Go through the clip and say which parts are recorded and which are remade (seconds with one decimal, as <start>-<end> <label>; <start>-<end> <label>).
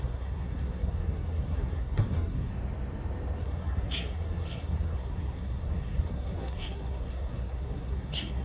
0.0-2.5 remade; 2.5-3.4 recorded; 3.4-8.4 remade